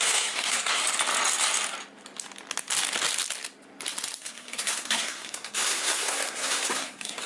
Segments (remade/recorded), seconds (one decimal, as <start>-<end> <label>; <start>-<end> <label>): 0.0-0.8 remade; 0.8-4.2 recorded; 4.2-7.3 remade